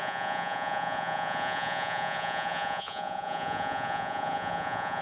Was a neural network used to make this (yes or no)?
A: yes